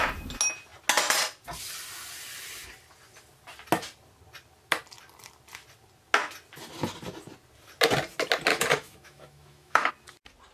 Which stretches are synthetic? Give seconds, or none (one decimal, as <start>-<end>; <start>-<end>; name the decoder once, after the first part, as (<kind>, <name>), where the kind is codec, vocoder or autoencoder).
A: 8.5-9.9 (autoencoder, DAC-VAE)